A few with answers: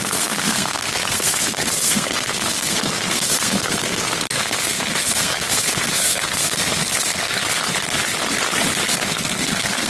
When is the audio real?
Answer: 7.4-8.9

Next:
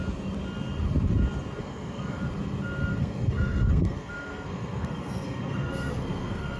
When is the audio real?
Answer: 0.0-1.6; 2.2-3.0

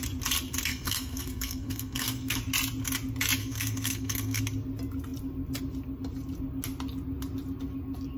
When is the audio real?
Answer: 0.0-0.7; 2.4-3.4; 4.4-8.2

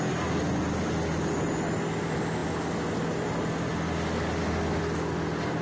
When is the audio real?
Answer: 0.0-5.6

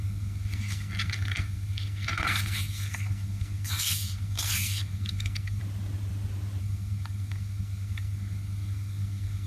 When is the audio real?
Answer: 5.6-6.6

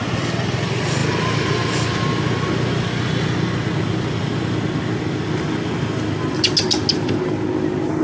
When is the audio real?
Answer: 0.0-8.0